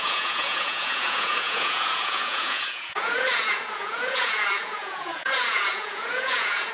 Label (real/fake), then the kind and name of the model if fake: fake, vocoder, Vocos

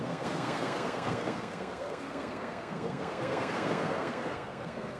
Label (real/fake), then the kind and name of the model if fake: fake, codec, SNAC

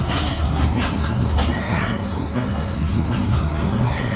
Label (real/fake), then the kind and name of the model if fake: fake, codec, SNAC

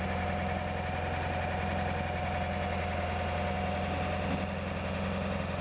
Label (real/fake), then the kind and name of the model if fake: real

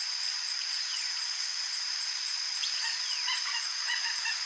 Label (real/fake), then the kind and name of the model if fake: fake, vocoder, Vocos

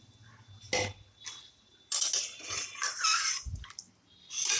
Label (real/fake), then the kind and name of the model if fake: real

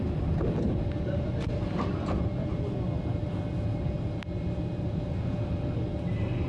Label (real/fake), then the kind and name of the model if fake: real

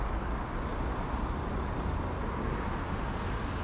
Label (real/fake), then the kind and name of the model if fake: real